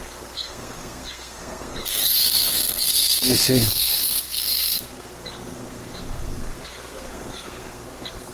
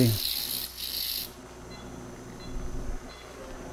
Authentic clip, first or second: second